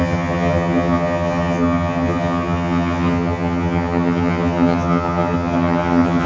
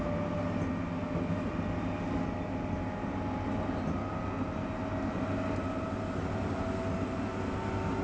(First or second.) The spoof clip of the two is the first